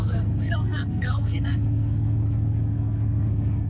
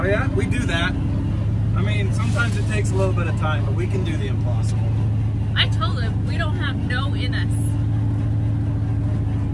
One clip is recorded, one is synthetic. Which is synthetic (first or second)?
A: first